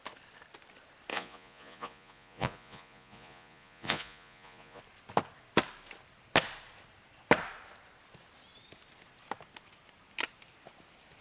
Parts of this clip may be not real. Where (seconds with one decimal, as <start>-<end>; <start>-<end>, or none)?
1.1-4.8